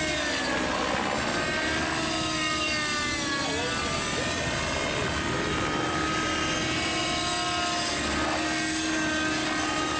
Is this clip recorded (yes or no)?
yes